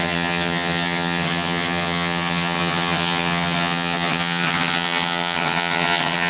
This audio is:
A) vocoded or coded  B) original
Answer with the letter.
A